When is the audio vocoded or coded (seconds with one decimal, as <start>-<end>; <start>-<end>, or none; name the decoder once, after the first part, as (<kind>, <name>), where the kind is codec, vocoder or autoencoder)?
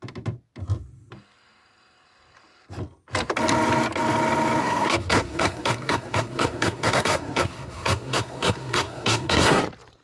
4.6-9.6 (codec, SNAC)